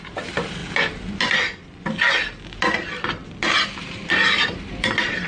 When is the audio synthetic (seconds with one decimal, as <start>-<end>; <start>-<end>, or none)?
0.0-0.6; 3.8-5.3